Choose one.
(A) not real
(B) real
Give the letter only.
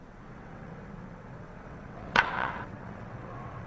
A